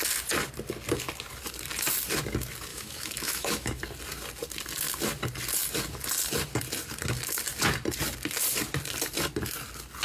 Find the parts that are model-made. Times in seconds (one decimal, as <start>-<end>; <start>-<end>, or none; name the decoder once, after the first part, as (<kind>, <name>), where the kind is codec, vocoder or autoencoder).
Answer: 2.7-3.8 (autoencoder, DAC-VAE)